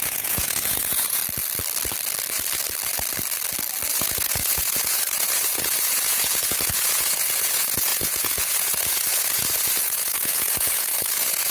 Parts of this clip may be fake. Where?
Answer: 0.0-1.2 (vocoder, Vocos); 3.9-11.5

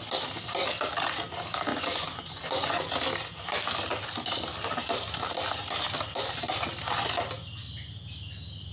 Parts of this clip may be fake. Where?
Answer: 1.7-2.9 (vocoder, Vocos)

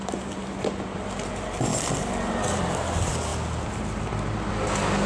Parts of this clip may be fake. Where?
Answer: none

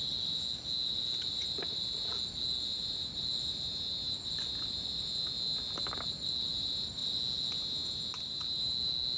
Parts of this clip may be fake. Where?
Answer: none

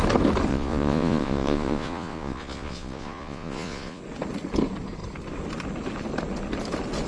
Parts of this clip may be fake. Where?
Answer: 0.5-4.0 (vocoder, Vocos)